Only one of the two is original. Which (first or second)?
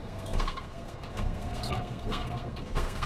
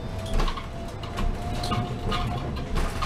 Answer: second